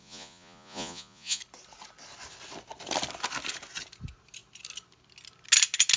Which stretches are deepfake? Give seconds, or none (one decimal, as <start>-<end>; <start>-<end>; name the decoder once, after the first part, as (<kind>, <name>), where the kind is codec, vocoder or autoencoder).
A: 0.0-1.4 (vocoder, Vocos)

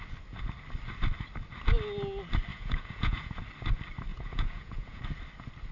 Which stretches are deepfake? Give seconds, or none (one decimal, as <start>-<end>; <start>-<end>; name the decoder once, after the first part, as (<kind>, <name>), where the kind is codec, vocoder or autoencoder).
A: 2.5-3.4 (vocoder, Vocos); 4.1-5.0

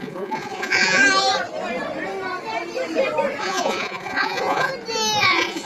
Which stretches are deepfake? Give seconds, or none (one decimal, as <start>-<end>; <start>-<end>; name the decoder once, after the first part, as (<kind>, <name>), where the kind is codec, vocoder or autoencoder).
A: 0.0-1.0 (vocoder, Vocos); 3.4-4.7; 5.2-5.7

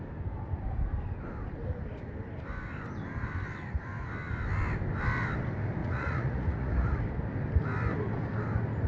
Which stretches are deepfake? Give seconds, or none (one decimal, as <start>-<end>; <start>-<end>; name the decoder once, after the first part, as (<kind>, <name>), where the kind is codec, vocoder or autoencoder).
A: 5.8-7.0 (vocoder, Vocos)

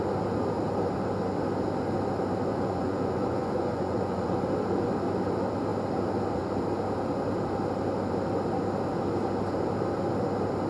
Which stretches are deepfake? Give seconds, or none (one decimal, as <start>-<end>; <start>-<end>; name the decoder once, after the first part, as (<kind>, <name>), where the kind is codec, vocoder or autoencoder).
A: 2.5-4.4 (vocoder, Vocos)

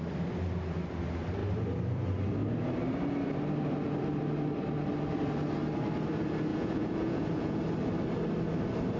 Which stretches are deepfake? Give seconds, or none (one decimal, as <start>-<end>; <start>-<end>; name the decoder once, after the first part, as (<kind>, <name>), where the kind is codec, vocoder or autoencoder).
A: 6.5-7.6 (vocoder, Vocos)

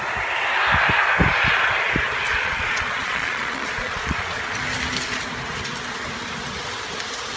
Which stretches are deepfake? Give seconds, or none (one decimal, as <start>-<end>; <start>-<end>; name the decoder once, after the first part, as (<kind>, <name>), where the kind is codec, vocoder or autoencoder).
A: 2.3-4.4 (vocoder, Vocos)